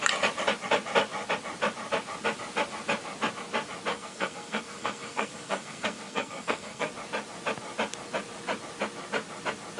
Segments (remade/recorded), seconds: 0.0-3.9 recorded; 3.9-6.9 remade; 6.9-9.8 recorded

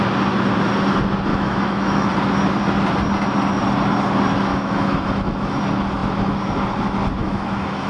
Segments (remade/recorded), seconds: 0.0-1.3 recorded; 1.3-2.1 remade; 2.1-4.5 recorded; 4.5-5.6 remade; 5.6-7.2 recorded; 7.2-7.9 remade

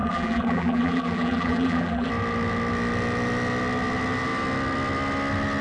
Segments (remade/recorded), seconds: 0.0-2.1 remade; 2.1-5.6 recorded

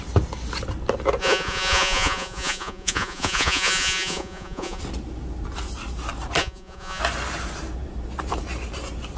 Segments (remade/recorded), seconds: 0.0-1.2 recorded; 1.2-4.8 remade; 4.8-6.4 recorded; 6.4-7.0 remade; 7.0-9.2 recorded

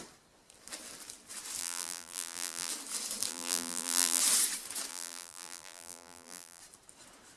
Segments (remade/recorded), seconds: 0.0-1.6 recorded; 1.6-2.7 remade; 2.7-3.3 recorded; 3.3-4.2 remade; 4.2-4.9 recorded; 4.9-6.6 remade; 6.6-7.4 recorded